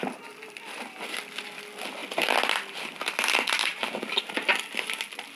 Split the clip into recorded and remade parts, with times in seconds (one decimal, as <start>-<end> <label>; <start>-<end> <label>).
0.0-3.7 recorded; 3.7-4.2 remade; 4.2-5.4 recorded